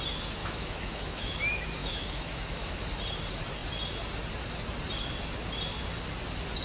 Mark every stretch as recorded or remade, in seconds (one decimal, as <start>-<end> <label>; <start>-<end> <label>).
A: 0.0-0.4 recorded; 0.4-1.4 remade; 1.4-1.8 recorded; 1.8-2.8 remade; 2.8-6.6 recorded